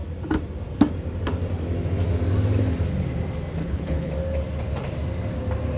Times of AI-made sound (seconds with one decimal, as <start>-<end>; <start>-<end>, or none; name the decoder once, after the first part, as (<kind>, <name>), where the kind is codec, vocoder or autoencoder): 3.6-4.1 (codec, HILCodec)